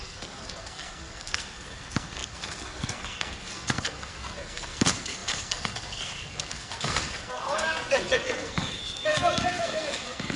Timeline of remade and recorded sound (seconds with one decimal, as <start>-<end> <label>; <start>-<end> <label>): 0.0-10.4 remade